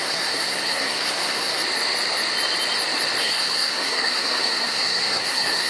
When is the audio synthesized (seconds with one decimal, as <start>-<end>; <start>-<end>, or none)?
0.0-1.6; 3.2-5.7